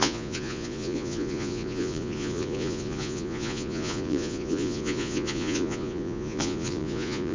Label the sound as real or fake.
fake